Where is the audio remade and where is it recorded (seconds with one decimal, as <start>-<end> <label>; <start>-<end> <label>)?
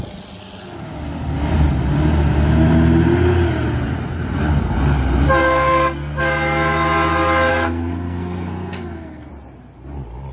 0.0-5.4 recorded; 5.4-6.2 remade; 6.2-7.5 recorded; 7.5-9.3 remade; 9.3-10.3 recorded